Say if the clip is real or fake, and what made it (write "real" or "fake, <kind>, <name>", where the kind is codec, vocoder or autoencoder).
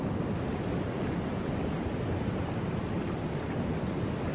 real